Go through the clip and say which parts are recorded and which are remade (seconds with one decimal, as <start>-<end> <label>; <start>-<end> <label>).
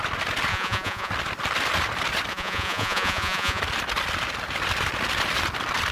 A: 0.0-0.5 recorded; 0.5-1.1 remade; 1.1-2.3 recorded; 2.3-3.6 remade; 3.6-5.9 recorded